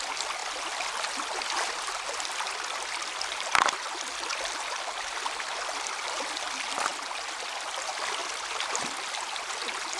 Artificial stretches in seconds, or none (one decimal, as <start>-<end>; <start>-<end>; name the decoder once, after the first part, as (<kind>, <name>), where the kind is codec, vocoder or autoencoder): 0.4-2.2 (vocoder, BigVGAN v2)